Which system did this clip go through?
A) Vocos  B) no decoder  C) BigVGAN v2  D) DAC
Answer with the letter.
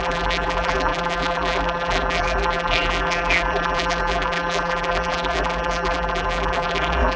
C